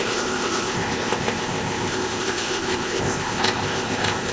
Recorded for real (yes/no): no